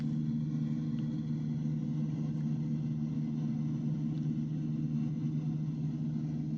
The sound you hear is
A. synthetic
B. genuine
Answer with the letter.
B